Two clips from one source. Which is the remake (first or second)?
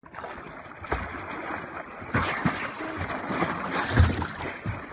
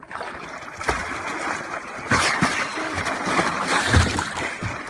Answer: second